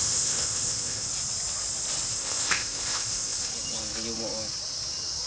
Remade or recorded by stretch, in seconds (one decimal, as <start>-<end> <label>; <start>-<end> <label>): 0.0-1.1 remade; 1.1-2.1 recorded; 2.1-3.5 remade; 3.5-5.3 recorded